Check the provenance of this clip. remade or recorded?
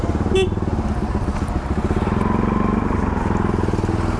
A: recorded